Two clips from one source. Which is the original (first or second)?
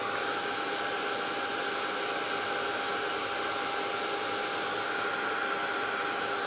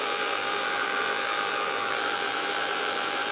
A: first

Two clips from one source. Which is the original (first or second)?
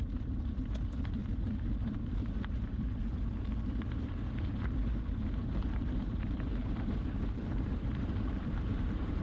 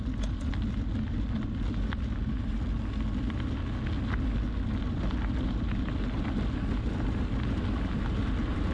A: second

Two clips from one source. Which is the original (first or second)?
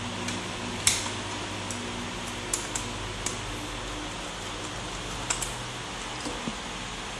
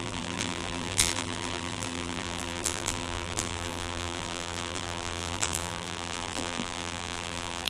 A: first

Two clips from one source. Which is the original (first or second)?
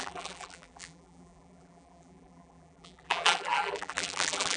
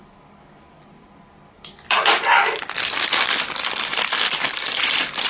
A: second